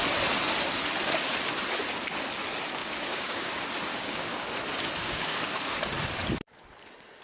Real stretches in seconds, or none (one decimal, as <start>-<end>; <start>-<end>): 0.0-2.8; 3.5-3.9; 4.5-5.0; 5.6-7.2